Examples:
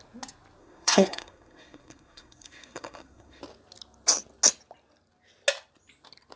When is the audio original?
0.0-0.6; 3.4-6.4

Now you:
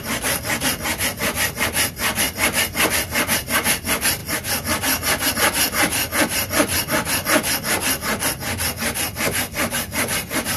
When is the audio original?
0.0-10.6

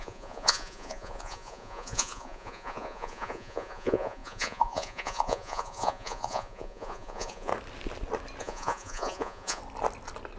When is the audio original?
7.5-8.4; 9.6-10.4

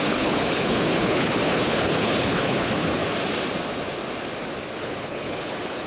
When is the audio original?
3.0-4.8

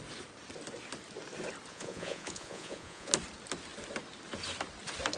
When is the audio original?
0.0-1.7; 3.1-5.2